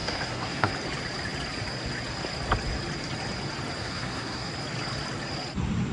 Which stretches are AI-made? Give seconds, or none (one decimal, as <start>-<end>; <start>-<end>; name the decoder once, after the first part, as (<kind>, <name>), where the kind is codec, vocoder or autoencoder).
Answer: 0.0-0.7 (codec, SNAC); 3.8-4.5

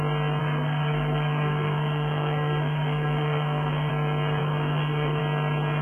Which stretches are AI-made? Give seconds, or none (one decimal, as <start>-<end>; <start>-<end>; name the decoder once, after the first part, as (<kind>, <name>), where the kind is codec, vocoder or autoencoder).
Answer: 0.4-3.9 (codec, SNAC); 4.4-5.2

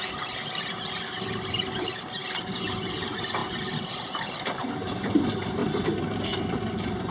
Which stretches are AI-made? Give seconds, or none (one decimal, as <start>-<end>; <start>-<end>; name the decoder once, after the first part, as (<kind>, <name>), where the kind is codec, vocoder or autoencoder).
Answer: 0.0-2.2 (vocoder, BigVGAN v2); 2.7-7.1

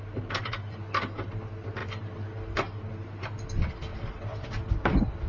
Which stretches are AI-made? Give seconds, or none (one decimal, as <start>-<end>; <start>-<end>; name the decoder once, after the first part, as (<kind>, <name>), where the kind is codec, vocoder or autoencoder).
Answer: none